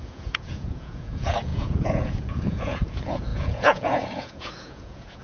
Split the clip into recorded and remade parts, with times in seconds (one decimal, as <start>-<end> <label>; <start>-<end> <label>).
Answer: 0.0-5.2 remade